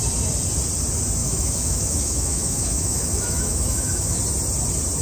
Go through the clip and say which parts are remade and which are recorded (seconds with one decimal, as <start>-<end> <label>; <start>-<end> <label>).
0.0-1.2 recorded; 1.2-4.2 remade; 4.2-5.0 recorded